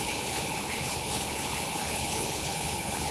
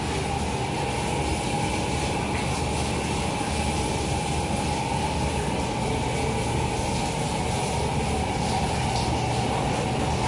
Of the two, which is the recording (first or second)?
second